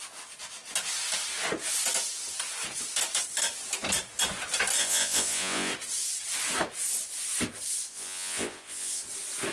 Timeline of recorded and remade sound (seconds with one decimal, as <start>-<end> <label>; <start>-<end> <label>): 0.0-4.8 recorded; 4.8-5.7 remade; 5.7-7.9 recorded; 7.9-9.0 remade; 9.0-9.5 recorded